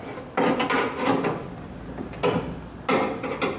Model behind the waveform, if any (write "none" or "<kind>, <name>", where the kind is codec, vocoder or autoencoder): none